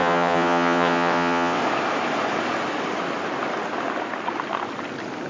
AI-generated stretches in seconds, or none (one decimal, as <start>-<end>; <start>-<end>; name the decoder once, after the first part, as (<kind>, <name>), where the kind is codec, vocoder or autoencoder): 0.0-1.6 (vocoder, WaveNeXt)